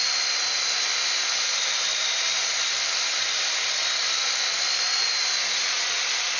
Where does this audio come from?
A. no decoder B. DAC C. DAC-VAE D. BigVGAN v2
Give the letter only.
A